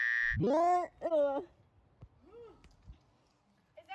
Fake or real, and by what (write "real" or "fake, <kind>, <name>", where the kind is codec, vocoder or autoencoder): real